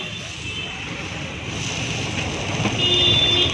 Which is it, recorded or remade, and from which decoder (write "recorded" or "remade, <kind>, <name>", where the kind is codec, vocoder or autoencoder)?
recorded